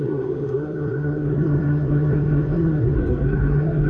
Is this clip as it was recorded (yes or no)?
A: no